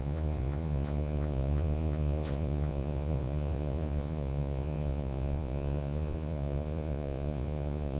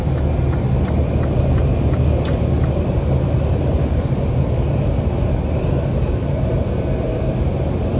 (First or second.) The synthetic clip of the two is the first